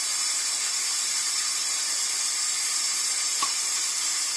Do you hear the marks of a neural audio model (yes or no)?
no